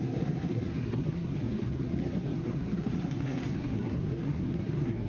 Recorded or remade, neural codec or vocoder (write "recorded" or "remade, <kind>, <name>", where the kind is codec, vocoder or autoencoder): remade, codec, SNAC